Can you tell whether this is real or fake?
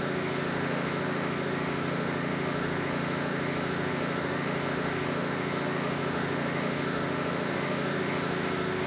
fake